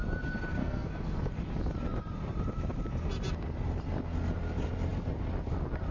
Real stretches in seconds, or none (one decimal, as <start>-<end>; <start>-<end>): 0.0-0.6; 1.3-5.9